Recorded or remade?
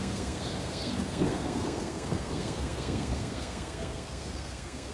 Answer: remade